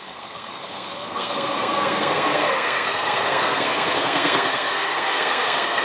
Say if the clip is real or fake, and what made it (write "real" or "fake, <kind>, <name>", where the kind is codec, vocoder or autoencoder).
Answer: fake, codec, SNAC